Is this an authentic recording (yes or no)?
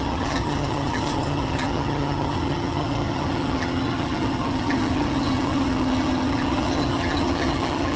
no